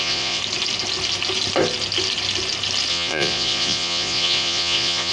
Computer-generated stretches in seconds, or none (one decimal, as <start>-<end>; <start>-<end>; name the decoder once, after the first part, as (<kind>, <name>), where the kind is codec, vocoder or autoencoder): 0.0-0.4 (vocoder, Vocos); 2.9-5.1